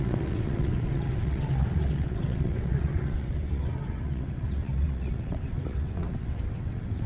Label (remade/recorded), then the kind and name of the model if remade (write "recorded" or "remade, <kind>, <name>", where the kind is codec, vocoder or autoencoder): remade, vocoder, WaveNeXt